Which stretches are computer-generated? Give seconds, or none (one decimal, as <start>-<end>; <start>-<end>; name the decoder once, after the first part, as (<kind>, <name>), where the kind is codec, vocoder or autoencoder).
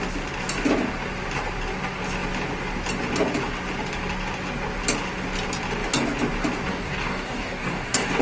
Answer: 6.7-8.2 (codec, DAC)